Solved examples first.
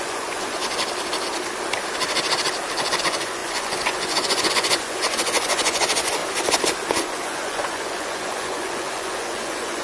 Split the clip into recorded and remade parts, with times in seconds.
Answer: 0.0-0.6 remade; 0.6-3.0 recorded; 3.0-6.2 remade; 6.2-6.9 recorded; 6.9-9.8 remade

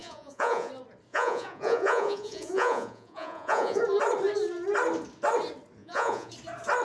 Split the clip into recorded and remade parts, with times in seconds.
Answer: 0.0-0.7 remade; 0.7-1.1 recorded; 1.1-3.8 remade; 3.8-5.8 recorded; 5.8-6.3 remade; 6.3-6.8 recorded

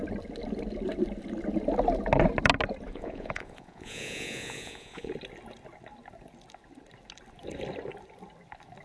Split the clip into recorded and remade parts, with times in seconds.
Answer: 0.0-2.9 recorded; 2.9-5.1 remade; 5.1-8.8 recorded

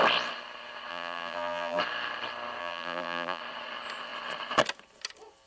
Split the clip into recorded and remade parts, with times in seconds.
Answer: 0.0-0.9 recorded; 0.9-1.8 remade; 1.8-2.6 recorded; 2.6-3.4 remade; 3.4-5.5 recorded

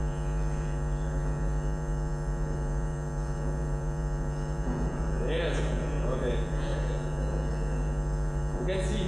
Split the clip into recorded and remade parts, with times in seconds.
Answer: 0.0-9.1 remade

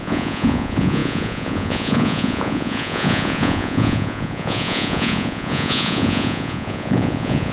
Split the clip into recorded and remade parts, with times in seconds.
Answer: 0.0-7.5 remade

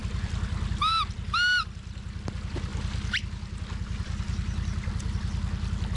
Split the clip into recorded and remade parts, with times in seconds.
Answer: 0.0-6.0 recorded

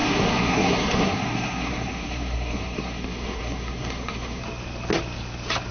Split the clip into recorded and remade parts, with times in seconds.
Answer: 0.0-4.4 remade; 4.4-5.7 recorded